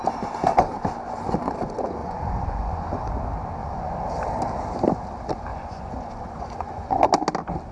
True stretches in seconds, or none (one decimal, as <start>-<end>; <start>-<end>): 0.0-2.0; 3.1-3.6; 4.1-5.5; 7.0-7.7